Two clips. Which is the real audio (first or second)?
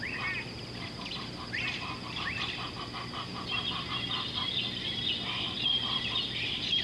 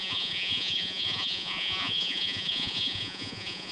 first